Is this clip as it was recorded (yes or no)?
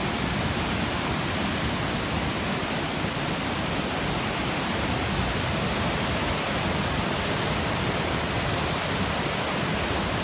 yes